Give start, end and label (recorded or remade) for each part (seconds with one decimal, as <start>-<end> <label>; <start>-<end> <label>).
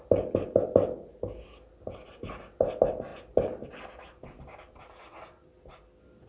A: 0.0-6.3 recorded